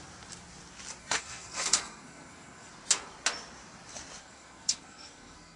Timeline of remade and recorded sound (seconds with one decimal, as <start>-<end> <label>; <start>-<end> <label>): 0.0-1.0 recorded; 1.0-2.7 remade; 2.7-4.2 recorded; 4.2-5.6 remade